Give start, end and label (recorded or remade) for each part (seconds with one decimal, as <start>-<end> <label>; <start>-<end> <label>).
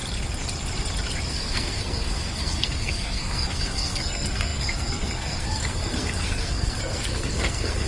0.0-1.3 recorded; 1.3-7.9 remade